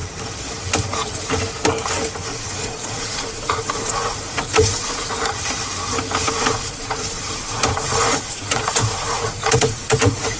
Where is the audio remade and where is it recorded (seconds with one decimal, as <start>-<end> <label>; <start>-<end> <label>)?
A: 0.0-2.3 recorded; 2.3-5.1 remade; 5.1-6.2 recorded; 6.2-10.4 remade